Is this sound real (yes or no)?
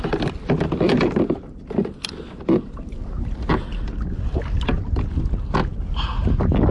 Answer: yes